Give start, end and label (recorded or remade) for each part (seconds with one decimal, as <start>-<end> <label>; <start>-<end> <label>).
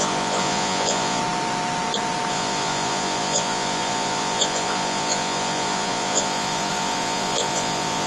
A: 0.0-1.2 remade; 1.2-2.3 recorded; 2.3-8.1 remade